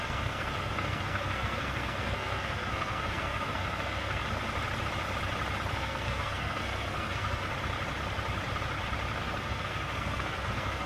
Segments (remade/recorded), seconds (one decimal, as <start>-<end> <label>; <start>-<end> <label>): 0.0-4.2 remade; 4.2-5.7 recorded; 5.7-7.4 remade; 7.4-9.2 recorded; 9.2-10.9 remade